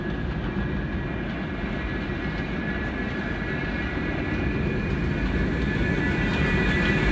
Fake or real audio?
real